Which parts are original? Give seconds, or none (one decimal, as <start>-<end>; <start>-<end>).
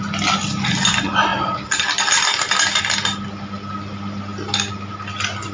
0.0-5.5